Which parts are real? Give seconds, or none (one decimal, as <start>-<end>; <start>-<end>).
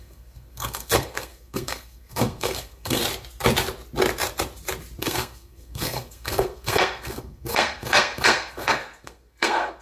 3.0-5.0